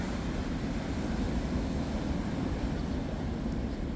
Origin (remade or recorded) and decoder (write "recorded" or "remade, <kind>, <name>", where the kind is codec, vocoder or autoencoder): recorded